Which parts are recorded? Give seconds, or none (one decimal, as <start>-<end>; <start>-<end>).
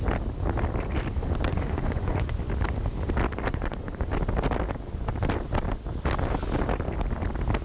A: 0.0-1.5; 2.4-3.5; 4.1-7.6